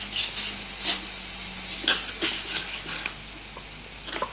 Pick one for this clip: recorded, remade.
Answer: recorded